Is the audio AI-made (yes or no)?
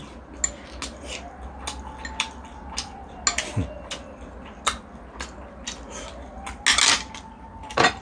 no